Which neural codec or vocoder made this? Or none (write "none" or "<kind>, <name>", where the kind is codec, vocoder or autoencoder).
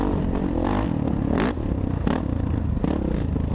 none